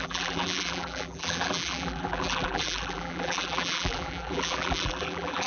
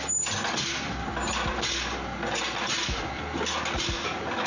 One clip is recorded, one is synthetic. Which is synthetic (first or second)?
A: first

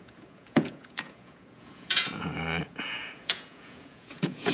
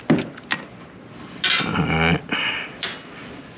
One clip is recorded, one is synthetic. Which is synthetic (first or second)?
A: first